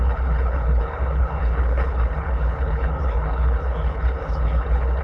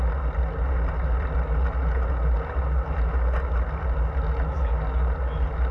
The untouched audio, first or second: second